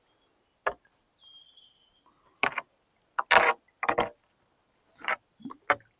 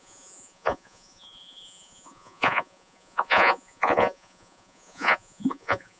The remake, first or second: second